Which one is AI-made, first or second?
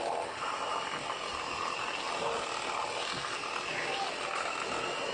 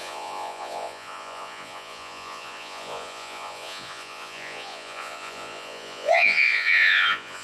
second